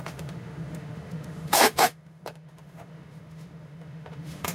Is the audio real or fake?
fake